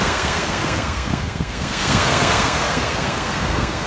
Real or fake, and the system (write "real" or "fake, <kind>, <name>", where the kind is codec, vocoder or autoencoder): fake, codec, SNAC